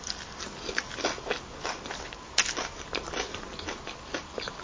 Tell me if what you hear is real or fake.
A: real